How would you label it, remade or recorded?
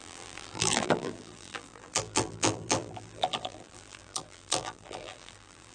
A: remade